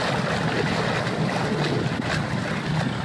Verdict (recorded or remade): recorded